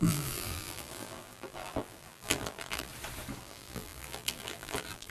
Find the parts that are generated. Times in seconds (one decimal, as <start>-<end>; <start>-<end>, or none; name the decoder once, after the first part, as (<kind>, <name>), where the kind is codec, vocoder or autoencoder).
0.0-2.9 (vocoder, BigVGAN v2); 3.4-5.1